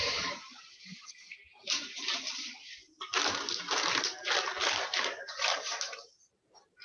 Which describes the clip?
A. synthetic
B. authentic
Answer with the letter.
A